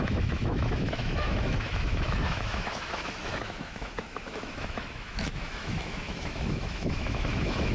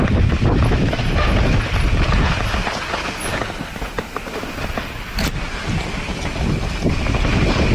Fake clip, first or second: first